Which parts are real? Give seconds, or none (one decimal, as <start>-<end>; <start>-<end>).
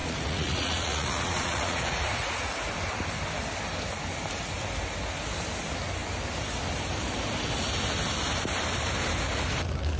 2.7-10.0